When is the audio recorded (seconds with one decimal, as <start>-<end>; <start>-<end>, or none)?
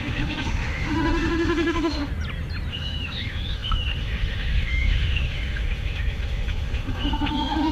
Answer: 2.1-2.7